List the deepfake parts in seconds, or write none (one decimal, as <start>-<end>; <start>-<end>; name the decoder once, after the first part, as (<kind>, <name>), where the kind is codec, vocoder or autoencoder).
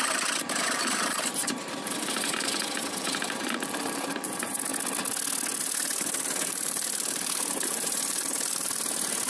0.0-4.7 (vocoder, BigVGAN v2); 5.6-9.3